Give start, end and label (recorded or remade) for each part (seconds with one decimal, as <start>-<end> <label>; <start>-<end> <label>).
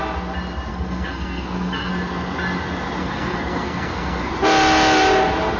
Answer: 0.0-0.7 recorded; 0.7-1.9 remade; 1.9-3.0 recorded; 3.0-4.3 remade; 4.3-5.6 recorded